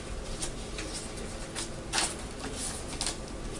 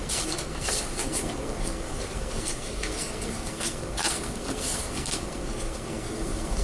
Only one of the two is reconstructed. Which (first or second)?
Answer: second